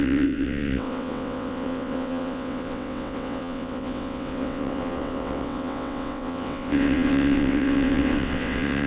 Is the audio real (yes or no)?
no